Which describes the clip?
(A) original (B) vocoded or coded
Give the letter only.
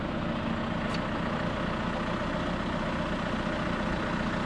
A